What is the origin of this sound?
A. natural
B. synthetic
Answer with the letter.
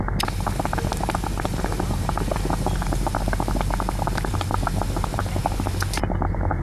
A